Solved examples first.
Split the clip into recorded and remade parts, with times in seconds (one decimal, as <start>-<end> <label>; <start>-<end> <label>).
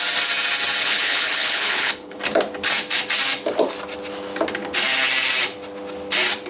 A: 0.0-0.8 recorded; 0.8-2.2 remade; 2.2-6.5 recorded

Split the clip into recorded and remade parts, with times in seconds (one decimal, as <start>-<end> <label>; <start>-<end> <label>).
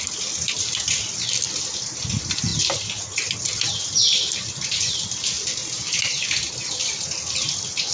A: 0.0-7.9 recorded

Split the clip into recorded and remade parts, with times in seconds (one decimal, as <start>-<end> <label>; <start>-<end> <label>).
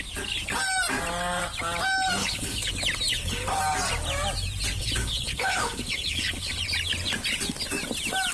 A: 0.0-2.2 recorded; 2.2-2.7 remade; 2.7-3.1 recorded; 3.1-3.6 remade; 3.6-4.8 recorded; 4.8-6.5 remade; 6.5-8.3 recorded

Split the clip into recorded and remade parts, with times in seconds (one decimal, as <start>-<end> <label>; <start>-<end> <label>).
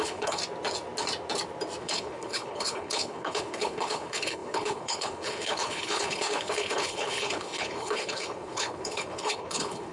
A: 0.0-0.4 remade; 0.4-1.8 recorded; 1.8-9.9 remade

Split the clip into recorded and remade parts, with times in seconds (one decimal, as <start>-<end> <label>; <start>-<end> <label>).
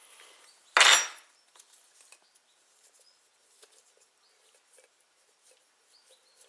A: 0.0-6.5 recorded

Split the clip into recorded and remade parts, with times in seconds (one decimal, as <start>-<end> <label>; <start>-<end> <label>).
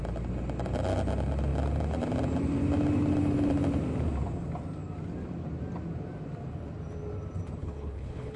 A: 0.0-7.6 recorded; 7.6-8.4 remade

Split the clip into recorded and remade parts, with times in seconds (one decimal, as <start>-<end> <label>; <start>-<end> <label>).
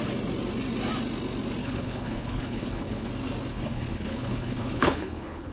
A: 0.0-1.6 recorded; 1.6-3.1 remade; 3.1-3.5 recorded; 3.5-5.5 remade